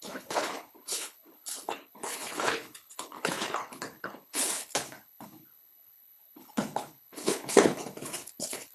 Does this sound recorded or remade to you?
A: remade